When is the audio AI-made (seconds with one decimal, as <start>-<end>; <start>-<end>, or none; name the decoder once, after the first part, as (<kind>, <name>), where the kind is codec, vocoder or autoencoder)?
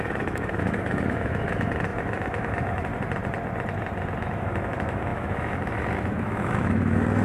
0.0-2.9 (autoencoder, DAC-VAE); 4.2-7.2